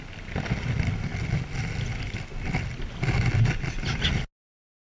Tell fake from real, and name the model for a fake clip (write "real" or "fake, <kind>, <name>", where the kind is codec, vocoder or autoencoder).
real